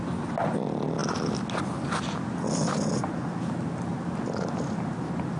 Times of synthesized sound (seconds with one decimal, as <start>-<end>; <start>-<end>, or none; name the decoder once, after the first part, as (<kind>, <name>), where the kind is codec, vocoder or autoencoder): none